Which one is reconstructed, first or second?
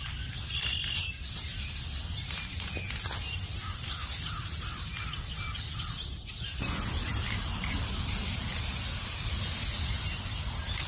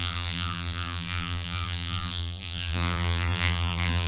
second